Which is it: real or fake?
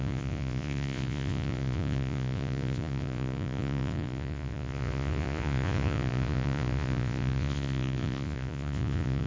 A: fake